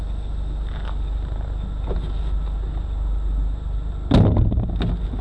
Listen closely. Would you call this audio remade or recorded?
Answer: recorded